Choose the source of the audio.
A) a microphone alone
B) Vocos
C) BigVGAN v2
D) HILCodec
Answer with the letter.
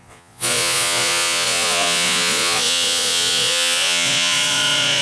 B